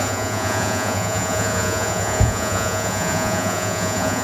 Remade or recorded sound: remade